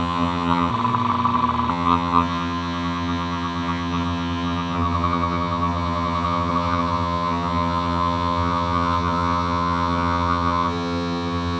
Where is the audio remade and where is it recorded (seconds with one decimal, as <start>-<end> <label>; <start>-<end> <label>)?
0.0-0.7 remade; 0.7-1.7 recorded; 1.7-11.6 remade